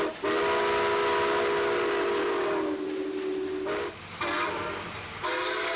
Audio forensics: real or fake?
real